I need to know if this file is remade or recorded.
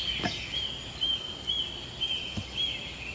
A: recorded